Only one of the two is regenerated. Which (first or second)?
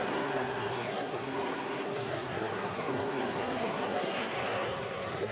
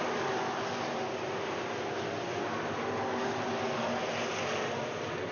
first